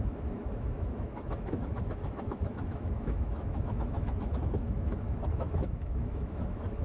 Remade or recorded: remade